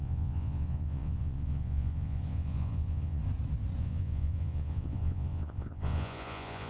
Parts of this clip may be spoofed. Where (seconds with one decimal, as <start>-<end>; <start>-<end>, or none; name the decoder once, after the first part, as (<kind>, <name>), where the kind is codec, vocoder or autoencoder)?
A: 0.0-3.2 (vocoder, Vocos); 3.8-6.7